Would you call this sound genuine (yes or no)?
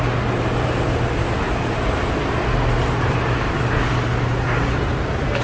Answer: yes